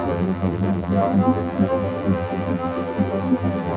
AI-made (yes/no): yes